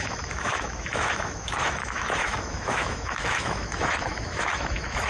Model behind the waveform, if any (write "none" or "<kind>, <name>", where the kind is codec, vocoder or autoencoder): autoencoder, DAC-VAE